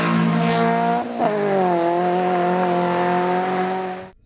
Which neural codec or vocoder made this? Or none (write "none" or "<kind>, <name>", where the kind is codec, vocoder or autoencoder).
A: none